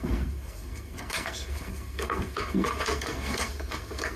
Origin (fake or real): fake